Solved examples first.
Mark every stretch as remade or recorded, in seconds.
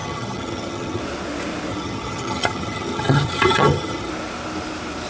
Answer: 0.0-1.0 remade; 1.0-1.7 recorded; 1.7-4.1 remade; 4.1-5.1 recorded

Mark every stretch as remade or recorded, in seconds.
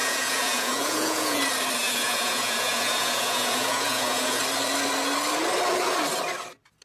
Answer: 0.0-1.4 remade; 1.4-1.8 recorded; 1.8-4.4 remade; 4.4-6.8 recorded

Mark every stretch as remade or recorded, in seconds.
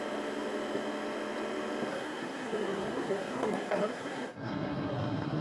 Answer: 0.0-1.9 recorded; 1.9-5.4 remade